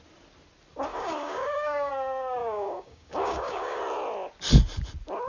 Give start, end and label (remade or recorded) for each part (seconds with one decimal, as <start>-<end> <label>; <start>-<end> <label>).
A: 0.0-0.9 recorded; 0.9-1.9 remade; 1.9-2.4 recorded; 2.4-3.8 remade; 3.8-5.3 recorded